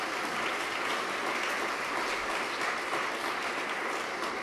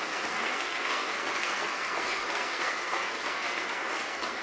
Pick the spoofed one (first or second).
second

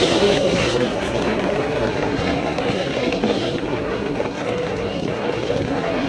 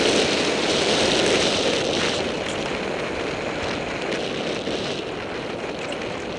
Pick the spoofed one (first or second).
first